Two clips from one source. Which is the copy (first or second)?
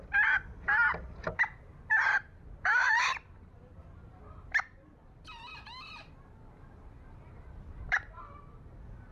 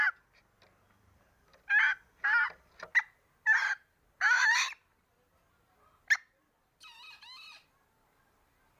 first